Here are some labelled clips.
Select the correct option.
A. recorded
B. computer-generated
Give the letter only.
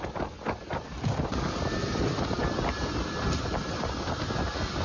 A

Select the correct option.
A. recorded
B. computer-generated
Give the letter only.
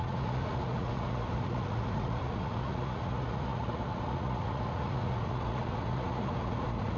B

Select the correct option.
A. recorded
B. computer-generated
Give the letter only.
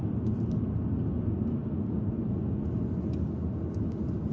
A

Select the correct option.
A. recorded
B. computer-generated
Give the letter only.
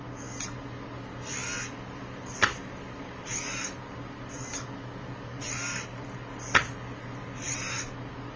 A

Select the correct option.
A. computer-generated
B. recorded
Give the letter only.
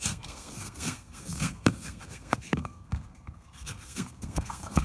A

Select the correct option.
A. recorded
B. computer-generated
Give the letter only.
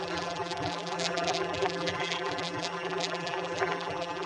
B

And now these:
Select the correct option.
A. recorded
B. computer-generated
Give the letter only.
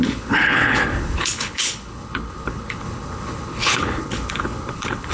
B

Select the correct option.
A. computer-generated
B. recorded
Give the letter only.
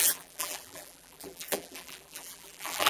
A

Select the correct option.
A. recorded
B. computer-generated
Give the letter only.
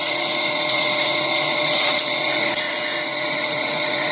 B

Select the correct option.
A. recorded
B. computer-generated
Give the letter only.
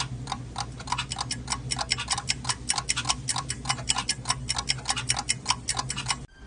A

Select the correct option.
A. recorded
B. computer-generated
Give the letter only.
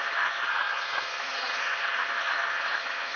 B